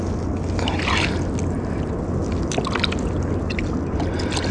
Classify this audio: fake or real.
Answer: real